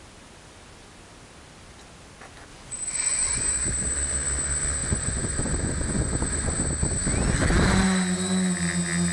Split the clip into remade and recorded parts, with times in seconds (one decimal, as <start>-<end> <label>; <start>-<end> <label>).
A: 0.0-2.5 recorded; 2.5-3.5 remade; 3.5-4.8 recorded; 4.8-6.6 remade; 6.6-9.1 recorded

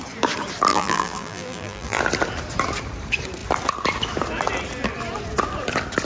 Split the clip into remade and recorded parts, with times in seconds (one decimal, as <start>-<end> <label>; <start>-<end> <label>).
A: 0.0-0.7 recorded; 0.7-2.0 remade; 2.0-6.0 recorded

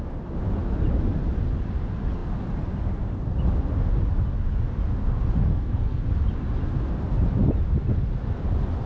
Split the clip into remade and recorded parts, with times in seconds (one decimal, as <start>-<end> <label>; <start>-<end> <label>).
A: 0.0-5.5 recorded; 5.5-6.0 remade; 6.0-8.9 recorded

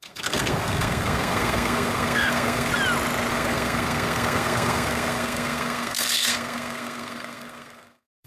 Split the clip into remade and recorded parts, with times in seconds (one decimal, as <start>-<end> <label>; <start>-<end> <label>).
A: 0.0-2.7 remade; 2.7-3.3 recorded; 3.3-8.3 remade